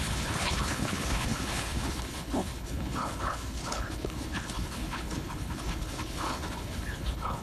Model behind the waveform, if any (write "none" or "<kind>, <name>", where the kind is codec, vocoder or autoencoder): codec, HILCodec